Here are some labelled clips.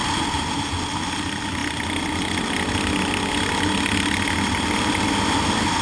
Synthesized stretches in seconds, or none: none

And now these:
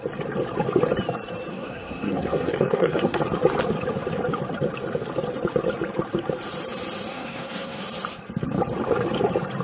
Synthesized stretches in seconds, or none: 1.5-3.2 (codec, SNAC); 7.1-7.8

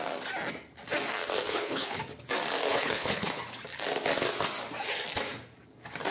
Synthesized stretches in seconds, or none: 1.5-2.0 (codec, HILCodec); 2.7-3.4

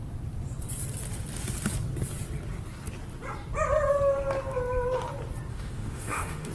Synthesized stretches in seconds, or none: 5.5-6.5 (autoencoder, DAC-VAE)

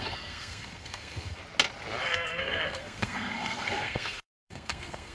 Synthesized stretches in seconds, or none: 0.0-1.4 (codec, SNAC); 2.0-5.1